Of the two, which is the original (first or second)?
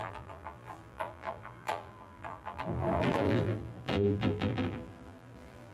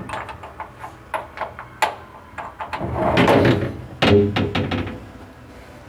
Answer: second